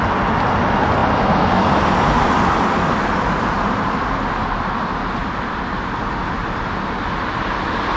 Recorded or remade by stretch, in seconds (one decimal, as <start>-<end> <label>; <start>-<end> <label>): 0.0-8.0 recorded